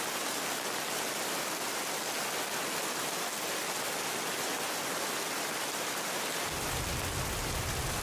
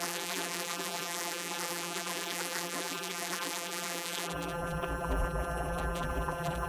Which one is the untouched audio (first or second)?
first